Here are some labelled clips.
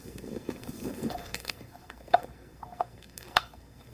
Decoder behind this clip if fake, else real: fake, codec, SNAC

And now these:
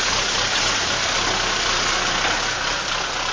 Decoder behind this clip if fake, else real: real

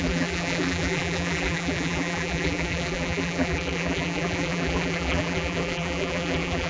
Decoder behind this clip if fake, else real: fake, vocoder, BigVGAN v2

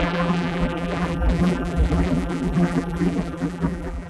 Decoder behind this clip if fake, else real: fake, vocoder, BigVGAN v2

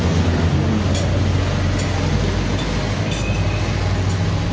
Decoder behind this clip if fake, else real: real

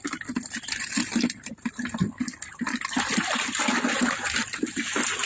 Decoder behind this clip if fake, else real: real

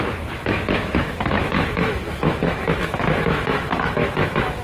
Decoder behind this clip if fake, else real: fake, autoencoder, DAC-VAE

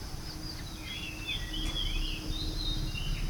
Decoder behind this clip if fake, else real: real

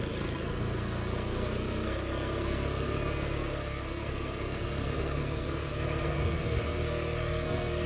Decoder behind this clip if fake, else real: fake, codec, SNAC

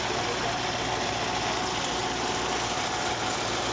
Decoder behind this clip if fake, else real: real